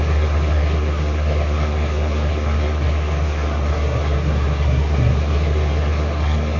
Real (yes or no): no